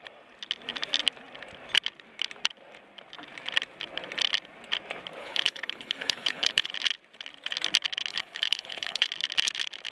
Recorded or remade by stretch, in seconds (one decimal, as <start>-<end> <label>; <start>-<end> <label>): 0.0-5.2 recorded; 5.2-6.7 remade; 6.7-8.1 recorded; 8.1-9.1 remade; 9.1-9.9 recorded